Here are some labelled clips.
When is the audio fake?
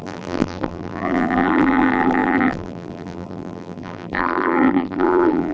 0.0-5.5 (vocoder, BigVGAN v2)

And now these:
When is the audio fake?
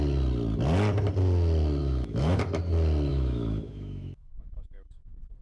1.8-2.4 (autoencoder, DAC-VAE); 3.1-4.9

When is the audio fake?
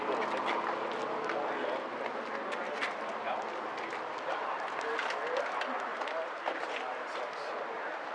5.9-6.8 (vocoder, BigVGAN v2)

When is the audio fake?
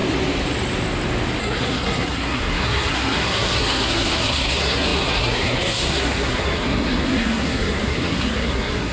1.4-8.9 (codec, SNAC)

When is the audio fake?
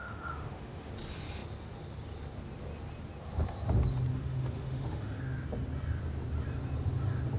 0.0-0.9 (autoencoder, DAC-VAE); 4.1-5.2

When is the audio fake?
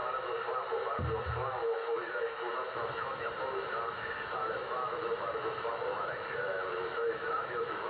1.3-7.9 (autoencoder, DAC-VAE)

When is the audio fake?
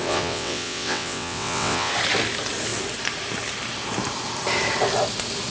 0.0-1.9 (vocoder, WaveNeXt)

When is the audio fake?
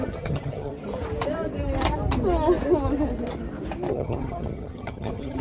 0.0-0.7 (vocoder, HiFi-GAN); 3.9-5.4